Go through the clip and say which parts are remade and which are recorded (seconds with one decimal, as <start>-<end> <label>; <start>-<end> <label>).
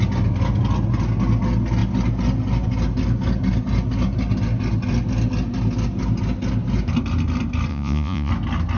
0.0-7.7 recorded; 7.7-8.3 remade; 8.3-8.8 recorded